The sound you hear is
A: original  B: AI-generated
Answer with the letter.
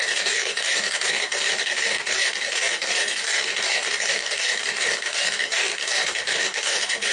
B